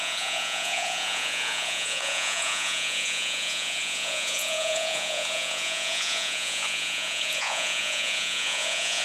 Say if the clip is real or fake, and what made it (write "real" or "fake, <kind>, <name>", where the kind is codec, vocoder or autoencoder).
fake, vocoder, Vocos